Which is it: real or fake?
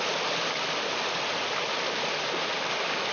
real